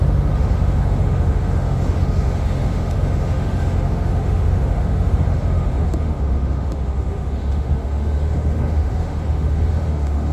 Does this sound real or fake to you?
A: fake